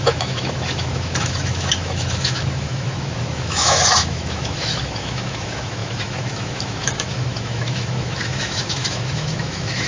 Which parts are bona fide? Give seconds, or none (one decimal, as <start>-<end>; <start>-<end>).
none